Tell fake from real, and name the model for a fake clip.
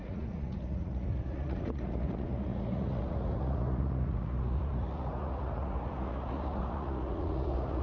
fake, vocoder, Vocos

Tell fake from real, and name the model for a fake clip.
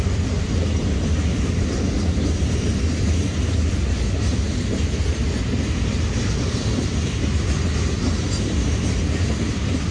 fake, vocoder, BigVGAN v2